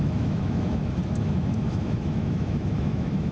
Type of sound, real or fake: fake